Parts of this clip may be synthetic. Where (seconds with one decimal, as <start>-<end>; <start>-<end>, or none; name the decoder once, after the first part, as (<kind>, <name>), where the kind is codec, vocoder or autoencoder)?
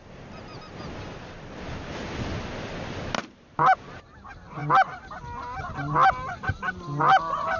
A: none